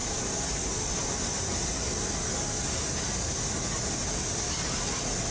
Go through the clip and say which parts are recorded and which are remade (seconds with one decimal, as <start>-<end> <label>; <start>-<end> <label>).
0.0-5.3 recorded